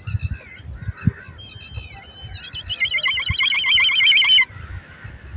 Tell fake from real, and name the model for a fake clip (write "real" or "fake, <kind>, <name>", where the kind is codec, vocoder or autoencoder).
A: real